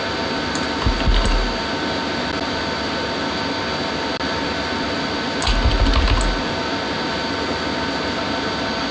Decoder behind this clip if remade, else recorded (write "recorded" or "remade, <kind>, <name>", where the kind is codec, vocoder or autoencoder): recorded